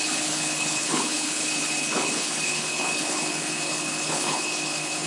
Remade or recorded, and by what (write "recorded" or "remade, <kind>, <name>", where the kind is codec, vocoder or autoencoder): remade, codec, HILCodec